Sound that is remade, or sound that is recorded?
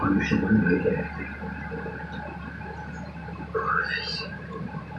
recorded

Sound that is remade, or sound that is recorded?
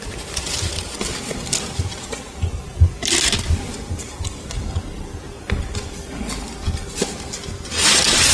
recorded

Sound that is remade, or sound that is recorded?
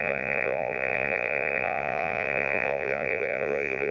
remade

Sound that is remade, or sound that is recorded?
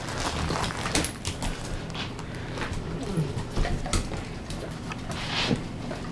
recorded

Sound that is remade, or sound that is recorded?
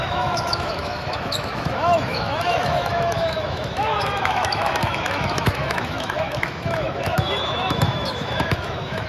remade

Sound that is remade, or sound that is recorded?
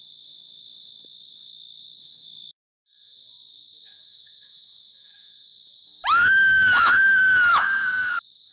remade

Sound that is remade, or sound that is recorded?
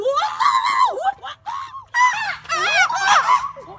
recorded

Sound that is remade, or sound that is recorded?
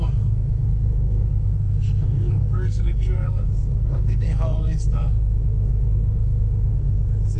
remade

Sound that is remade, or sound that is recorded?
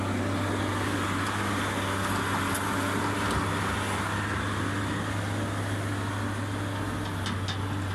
recorded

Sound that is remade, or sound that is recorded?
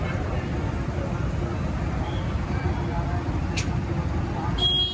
recorded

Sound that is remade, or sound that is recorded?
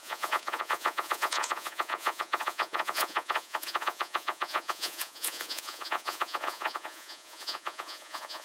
remade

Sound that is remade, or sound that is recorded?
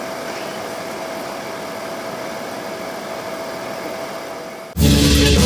recorded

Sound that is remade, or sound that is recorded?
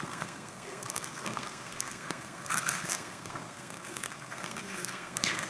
remade